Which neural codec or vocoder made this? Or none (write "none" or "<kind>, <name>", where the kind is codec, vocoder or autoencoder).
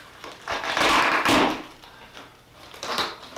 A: vocoder, BigVGAN v2